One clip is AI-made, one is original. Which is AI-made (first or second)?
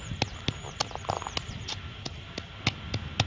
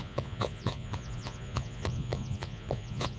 second